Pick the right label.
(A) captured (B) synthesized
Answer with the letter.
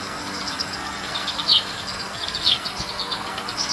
B